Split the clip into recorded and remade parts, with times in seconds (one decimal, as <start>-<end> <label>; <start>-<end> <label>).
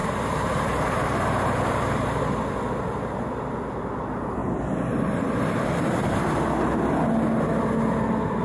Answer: 0.0-2.2 remade; 2.2-8.4 recorded